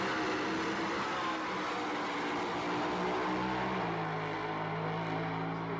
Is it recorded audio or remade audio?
recorded